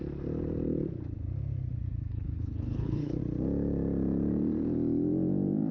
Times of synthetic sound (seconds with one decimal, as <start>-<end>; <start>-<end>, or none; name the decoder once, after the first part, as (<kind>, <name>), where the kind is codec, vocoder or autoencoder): 2.1-3.2 (codec, HILCodec)